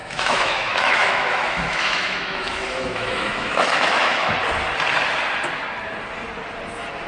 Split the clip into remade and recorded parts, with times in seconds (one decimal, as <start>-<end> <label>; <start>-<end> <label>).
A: 0.0-4.3 remade; 4.3-7.1 recorded